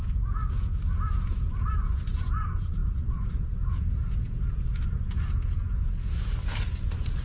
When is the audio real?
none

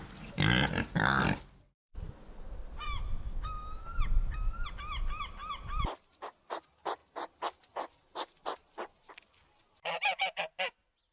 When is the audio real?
0.0-11.1

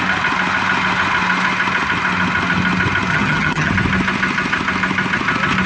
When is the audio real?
0.0-3.1; 3.7-5.7

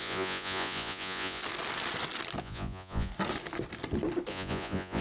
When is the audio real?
1.4-2.4; 3.1-4.3

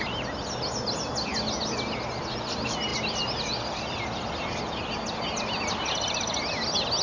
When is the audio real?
0.0-7.0